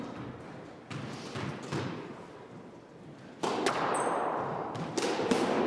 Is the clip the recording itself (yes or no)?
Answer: yes